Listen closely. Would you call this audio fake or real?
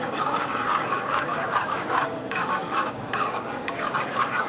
fake